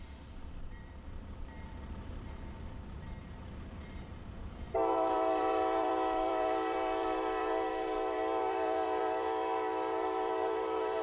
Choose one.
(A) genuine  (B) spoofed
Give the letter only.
B